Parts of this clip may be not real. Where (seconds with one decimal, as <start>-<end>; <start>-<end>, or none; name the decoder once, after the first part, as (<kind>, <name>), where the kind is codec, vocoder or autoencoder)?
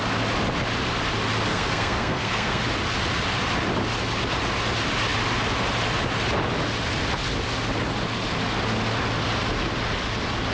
1.5-2.6 (codec, SNAC)